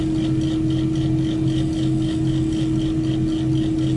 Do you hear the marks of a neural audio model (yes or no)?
no